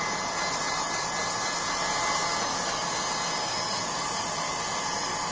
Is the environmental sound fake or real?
real